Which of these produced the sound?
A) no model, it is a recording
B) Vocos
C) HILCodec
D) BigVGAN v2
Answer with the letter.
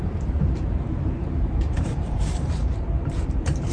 D